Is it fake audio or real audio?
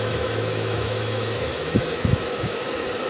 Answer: fake